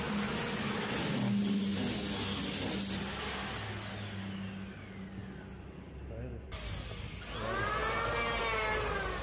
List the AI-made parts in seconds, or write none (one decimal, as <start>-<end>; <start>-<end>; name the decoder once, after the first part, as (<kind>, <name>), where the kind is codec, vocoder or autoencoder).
none